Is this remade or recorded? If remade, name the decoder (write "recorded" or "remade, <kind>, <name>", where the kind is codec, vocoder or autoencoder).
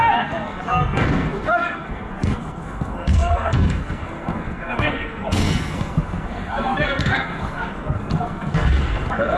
remade, codec, SNAC